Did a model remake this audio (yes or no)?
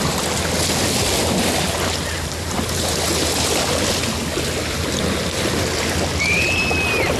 no